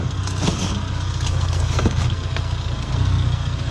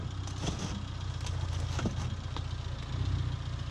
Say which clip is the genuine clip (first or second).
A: second